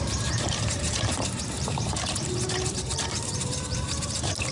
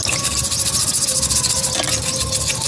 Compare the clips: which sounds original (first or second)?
second